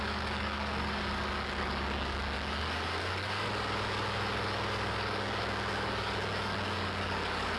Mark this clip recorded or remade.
remade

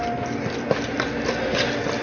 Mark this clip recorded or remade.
recorded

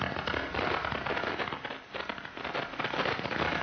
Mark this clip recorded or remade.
recorded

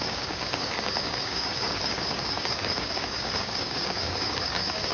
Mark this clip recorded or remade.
remade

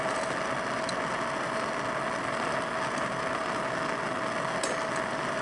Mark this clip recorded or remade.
recorded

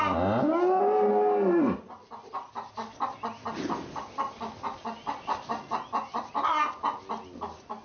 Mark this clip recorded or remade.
recorded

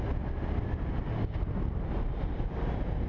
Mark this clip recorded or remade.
recorded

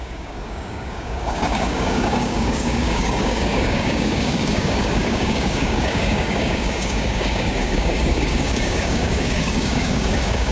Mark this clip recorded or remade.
remade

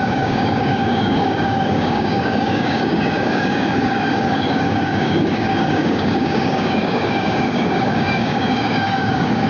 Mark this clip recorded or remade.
remade